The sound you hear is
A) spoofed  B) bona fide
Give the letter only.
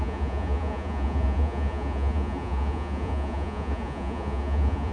A